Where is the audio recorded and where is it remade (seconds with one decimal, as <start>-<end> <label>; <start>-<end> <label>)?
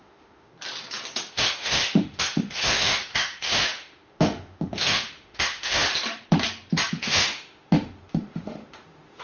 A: 0.0-0.5 remade; 0.5-1.3 recorded; 1.3-5.8 remade; 5.8-6.9 recorded; 6.9-9.2 remade